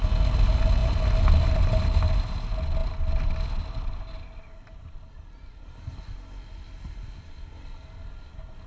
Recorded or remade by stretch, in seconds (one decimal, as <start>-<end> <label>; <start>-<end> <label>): 0.0-8.7 recorded